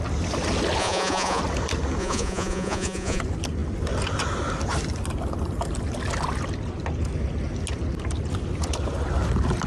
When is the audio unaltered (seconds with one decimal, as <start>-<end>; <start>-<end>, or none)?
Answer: 0.0-0.8; 1.4-2.0; 3.2-9.7